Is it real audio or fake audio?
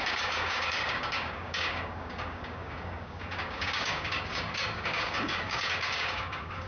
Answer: fake